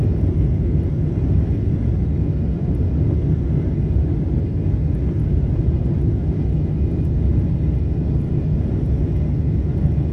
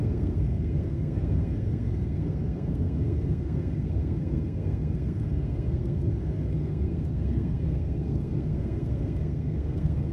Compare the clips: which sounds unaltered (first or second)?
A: first